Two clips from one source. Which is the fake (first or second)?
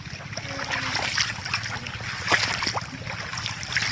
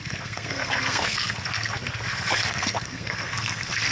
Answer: second